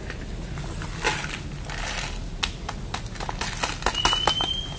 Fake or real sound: real